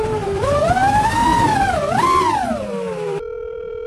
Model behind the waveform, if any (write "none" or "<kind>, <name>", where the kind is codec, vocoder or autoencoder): vocoder, BigVGAN v2